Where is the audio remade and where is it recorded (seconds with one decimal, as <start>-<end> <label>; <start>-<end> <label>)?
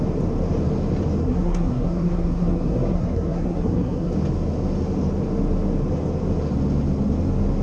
0.0-1.2 recorded; 1.2-4.1 remade; 4.1-7.6 recorded